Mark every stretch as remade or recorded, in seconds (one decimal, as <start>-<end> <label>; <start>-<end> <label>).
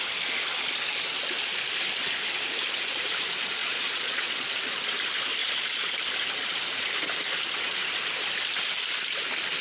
0.0-3.6 recorded; 3.6-4.5 remade; 4.5-5.4 recorded; 5.4-5.9 remade; 5.9-9.6 recorded